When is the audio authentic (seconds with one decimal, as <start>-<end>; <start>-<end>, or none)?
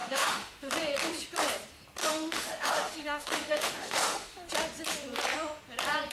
0.7-2.0; 4.5-6.1